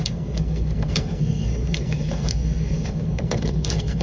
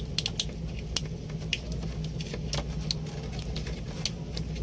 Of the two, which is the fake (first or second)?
first